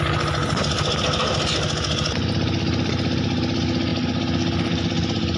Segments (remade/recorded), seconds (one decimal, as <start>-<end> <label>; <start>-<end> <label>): 0.0-5.4 recorded